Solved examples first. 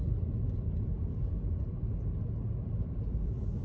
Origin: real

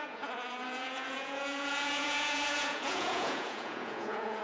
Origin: fake